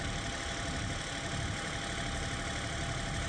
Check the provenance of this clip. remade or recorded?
recorded